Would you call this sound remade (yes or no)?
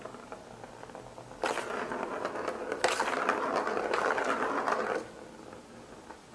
no